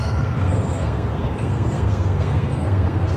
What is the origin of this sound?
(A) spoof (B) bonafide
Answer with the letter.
A